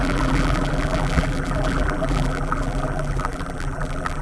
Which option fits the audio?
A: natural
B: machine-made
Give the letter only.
B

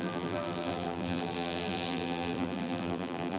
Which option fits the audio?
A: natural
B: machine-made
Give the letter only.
B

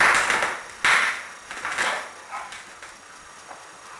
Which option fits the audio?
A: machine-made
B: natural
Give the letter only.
B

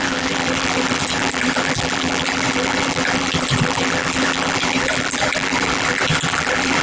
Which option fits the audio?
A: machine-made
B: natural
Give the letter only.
A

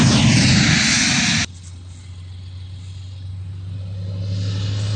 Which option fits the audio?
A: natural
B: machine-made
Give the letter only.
A